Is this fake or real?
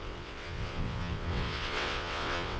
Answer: fake